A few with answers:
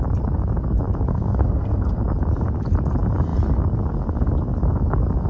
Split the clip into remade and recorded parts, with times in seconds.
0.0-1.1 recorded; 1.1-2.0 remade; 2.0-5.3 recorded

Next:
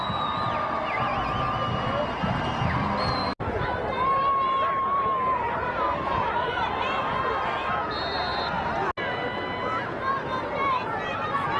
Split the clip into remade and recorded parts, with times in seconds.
0.0-11.6 recorded

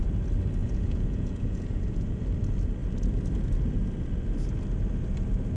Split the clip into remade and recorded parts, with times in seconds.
0.0-0.6 recorded; 0.6-2.2 remade; 2.2-5.6 recorded

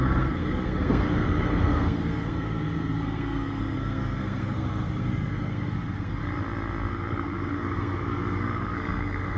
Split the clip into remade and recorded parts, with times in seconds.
0.0-6.2 remade; 6.2-6.9 recorded; 6.9-9.4 remade

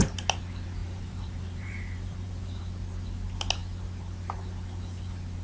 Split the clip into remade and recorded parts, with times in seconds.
0.0-0.8 recorded; 0.8-2.6 remade; 2.6-5.4 recorded

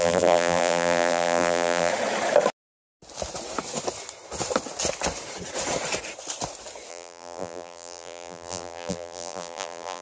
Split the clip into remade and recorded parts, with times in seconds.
0.0-1.9 remade; 1.9-6.9 recorded; 6.9-10.0 remade